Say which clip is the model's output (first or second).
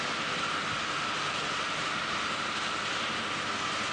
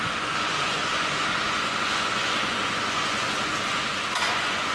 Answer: second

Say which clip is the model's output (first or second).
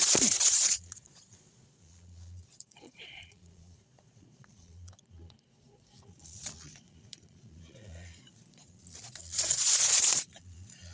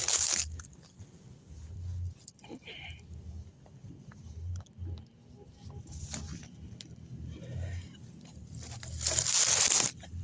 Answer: first